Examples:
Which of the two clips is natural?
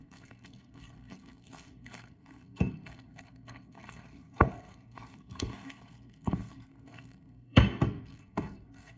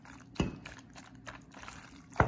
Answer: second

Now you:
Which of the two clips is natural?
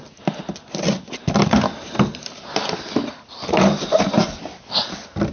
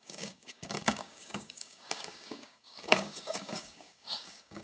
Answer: first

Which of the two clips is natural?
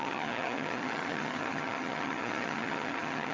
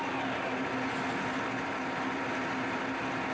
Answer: second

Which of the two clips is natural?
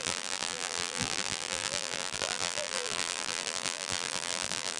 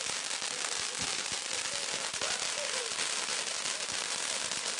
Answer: second